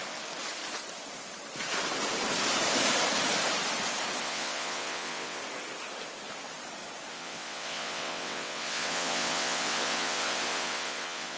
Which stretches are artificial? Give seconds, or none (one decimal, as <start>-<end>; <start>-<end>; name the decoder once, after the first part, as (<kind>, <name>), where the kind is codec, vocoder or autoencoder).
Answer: 4.2-5.4 (vocoder, WaveNeXt); 7.1-11.4